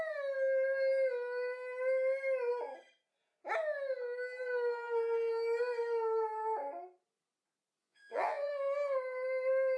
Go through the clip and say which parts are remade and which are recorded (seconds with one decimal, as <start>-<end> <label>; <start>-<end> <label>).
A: 0.0-7.8 recorded; 7.8-8.5 remade; 8.5-9.8 recorded